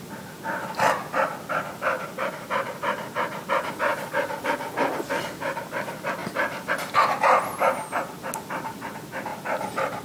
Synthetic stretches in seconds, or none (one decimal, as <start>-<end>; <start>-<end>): 6.2-6.7; 9.3-10.0